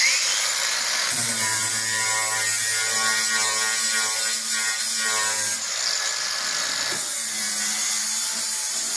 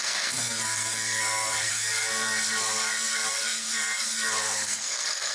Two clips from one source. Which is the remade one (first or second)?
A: second